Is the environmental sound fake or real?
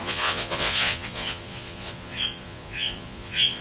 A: fake